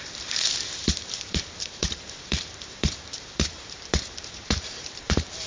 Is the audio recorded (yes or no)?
no